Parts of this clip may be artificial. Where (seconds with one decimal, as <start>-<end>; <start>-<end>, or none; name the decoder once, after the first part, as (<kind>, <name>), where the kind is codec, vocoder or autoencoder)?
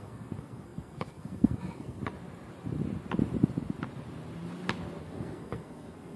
0.0-2.0 (codec, SNAC); 5.0-6.2